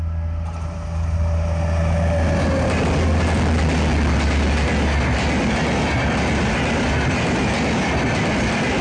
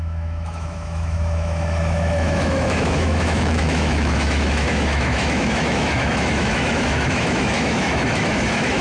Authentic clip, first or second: first